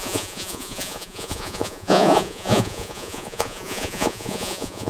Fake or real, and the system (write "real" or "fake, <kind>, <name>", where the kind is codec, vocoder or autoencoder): fake, vocoder, Vocos